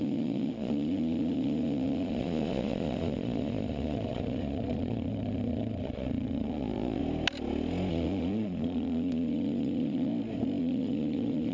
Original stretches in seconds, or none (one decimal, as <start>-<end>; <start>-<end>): 7.0-7.9; 10.1-10.6